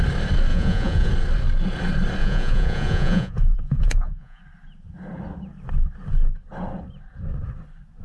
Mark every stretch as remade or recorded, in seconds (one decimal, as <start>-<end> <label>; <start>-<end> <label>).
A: 0.0-0.5 recorded; 0.5-1.1 remade; 1.1-2.2 recorded; 2.2-4.4 remade; 4.4-8.0 recorded